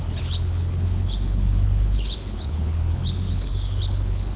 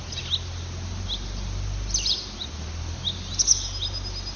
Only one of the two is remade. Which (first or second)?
first